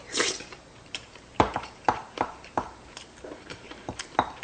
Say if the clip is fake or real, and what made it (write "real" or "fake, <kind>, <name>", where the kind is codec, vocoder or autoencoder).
fake, vocoder, BigVGAN v2